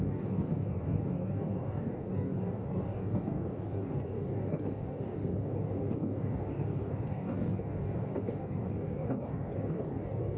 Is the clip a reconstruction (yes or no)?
yes